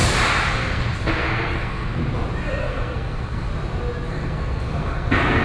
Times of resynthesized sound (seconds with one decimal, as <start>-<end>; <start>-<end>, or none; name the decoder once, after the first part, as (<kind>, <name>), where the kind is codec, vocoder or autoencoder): 0.5-2.0 (codec, SNAC); 2.6-3.5; 4.1-5.4